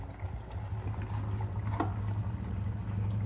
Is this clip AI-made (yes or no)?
no